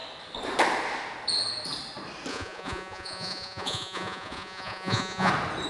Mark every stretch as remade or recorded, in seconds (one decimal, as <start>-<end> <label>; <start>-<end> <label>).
0.0-2.3 recorded; 2.3-5.3 remade; 5.3-5.7 recorded